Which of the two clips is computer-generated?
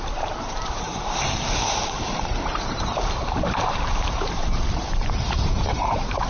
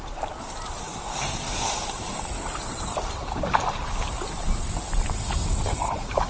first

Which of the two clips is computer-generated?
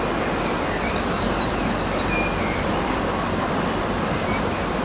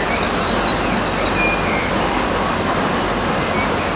first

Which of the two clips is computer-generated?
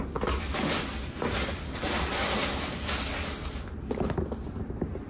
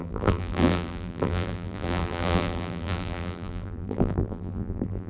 second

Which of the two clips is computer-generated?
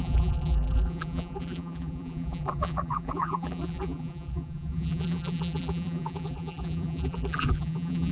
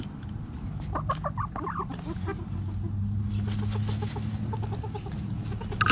first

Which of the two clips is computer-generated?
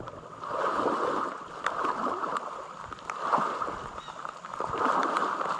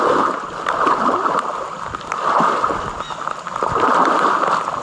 first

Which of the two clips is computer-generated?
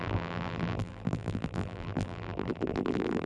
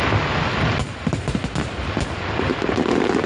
first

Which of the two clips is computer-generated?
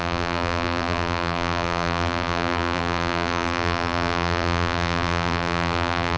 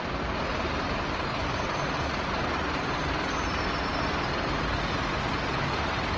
first